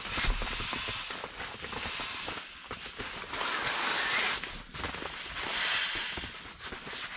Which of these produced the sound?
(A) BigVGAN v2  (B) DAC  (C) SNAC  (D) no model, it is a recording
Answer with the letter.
D